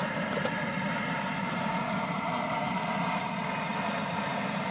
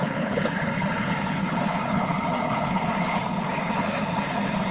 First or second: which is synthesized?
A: second